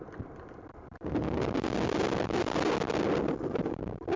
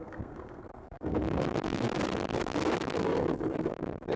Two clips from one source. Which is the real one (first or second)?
first